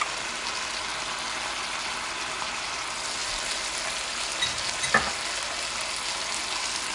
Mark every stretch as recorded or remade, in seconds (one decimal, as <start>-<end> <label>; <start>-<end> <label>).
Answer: 0.0-6.9 recorded